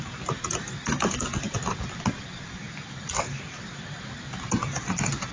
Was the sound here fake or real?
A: real